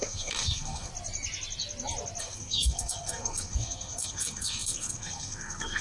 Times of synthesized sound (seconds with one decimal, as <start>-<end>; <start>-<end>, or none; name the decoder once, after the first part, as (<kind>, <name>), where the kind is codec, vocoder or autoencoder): 0.0-0.9 (codec, SNAC); 2.2-5.8